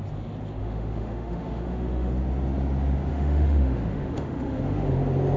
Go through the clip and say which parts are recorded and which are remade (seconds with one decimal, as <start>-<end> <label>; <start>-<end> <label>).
0.0-0.6 recorded; 0.6-2.1 remade; 2.1-3.1 recorded; 3.1-4.9 remade; 4.9-5.4 recorded